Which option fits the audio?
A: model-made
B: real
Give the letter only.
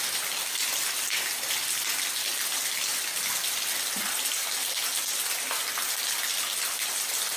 B